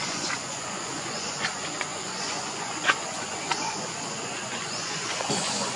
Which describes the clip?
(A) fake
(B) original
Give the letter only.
A